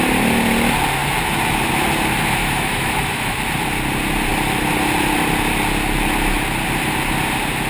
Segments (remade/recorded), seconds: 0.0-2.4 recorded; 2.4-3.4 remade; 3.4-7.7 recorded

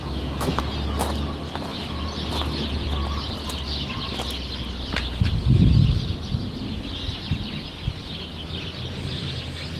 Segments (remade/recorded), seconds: 0.0-0.6 remade; 0.6-9.8 recorded

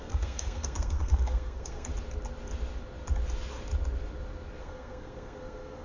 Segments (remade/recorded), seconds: 0.0-1.9 remade; 1.9-4.6 recorded; 4.6-5.8 remade